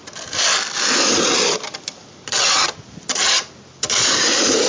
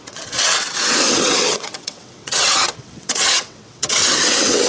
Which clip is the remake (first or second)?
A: second